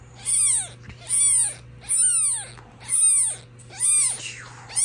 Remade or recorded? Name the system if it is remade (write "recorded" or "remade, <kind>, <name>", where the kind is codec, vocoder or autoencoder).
recorded